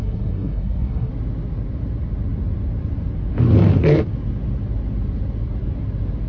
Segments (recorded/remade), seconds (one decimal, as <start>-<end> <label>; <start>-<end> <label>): 0.0-1.1 remade; 1.1-6.3 recorded